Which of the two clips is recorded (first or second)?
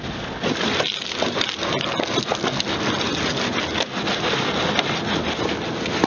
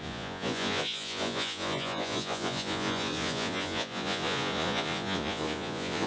first